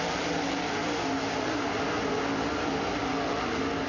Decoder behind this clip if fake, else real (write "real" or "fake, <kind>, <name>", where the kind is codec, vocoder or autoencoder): real